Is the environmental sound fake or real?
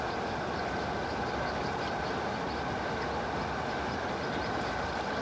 real